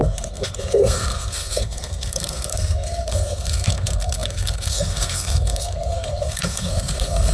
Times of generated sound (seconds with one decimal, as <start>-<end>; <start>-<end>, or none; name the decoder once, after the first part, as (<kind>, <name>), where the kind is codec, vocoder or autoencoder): 0.0-7.3 (codec, SNAC)